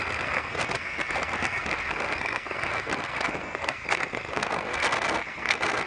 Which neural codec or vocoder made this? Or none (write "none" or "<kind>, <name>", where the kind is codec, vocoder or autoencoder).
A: codec, SNAC